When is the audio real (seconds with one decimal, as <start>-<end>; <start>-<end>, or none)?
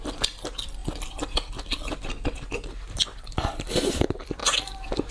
0.0-5.1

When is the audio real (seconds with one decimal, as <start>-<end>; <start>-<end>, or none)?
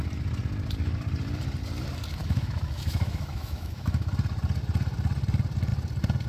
0.0-2.2; 4.1-6.3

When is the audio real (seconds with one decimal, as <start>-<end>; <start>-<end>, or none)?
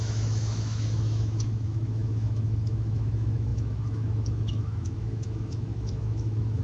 none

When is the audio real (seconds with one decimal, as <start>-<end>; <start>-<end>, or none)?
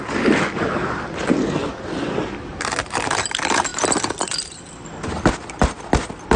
0.0-6.4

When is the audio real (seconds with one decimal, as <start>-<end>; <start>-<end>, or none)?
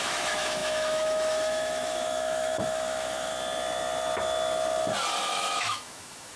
3.3-5.2